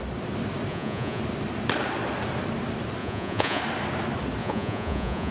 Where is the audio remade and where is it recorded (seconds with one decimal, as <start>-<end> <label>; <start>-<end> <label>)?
0.0-0.7 recorded; 0.7-1.2 remade; 1.2-3.0 recorded; 3.0-3.6 remade; 3.6-4.4 recorded; 4.4-5.3 remade